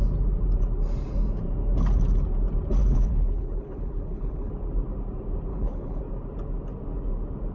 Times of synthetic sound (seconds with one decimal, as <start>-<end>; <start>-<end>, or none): 2.8-4.5; 5.5-6.0